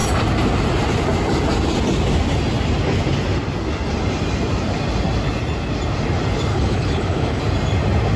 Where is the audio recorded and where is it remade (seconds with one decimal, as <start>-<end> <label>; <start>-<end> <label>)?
0.0-6.5 recorded; 6.5-7.4 remade; 7.4-8.2 recorded